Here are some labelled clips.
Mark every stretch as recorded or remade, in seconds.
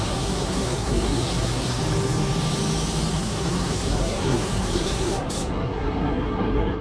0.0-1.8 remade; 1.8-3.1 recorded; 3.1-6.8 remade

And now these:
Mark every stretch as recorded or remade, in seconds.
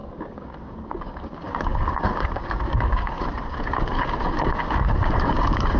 0.0-5.8 remade